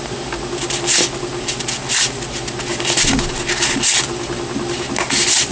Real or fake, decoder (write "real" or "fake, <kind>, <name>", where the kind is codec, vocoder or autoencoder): real